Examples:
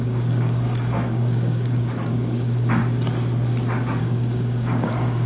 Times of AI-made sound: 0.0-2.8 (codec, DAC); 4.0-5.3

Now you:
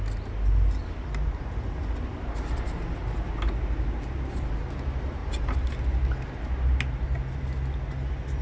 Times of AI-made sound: 5.2-5.7 (vocoder, BigVGAN v2)

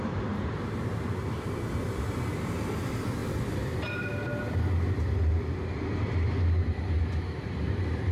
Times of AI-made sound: 0.0-3.2 (vocoder, BigVGAN v2); 7.0-8.1

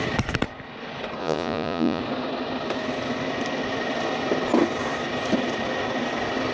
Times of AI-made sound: 1.2-2.0 (vocoder, Vocos)

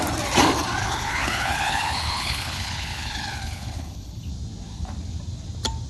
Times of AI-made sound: 0.8-4.3 (codec, HILCodec)

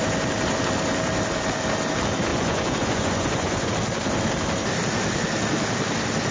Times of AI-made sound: 2.3-3.7 (vocoder, Vocos)